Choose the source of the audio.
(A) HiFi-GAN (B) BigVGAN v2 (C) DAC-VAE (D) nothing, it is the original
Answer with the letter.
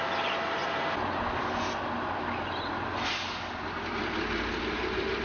D